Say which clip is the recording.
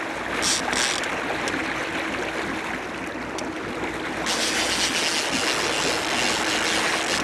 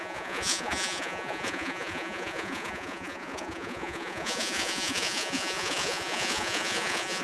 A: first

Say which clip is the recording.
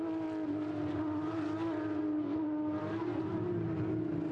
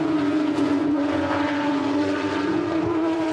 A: first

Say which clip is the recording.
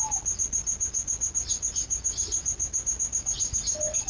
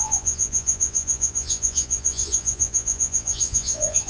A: first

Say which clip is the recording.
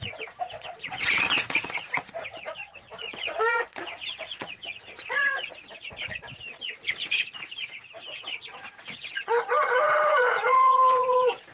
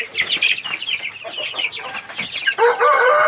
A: second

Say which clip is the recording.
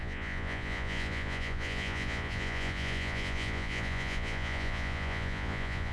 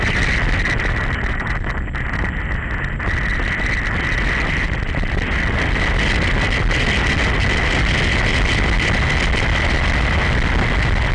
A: second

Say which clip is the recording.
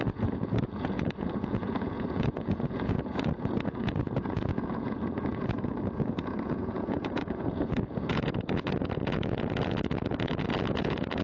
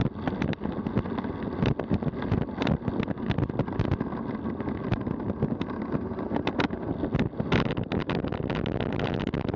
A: second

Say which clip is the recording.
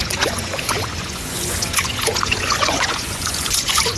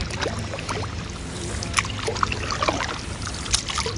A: second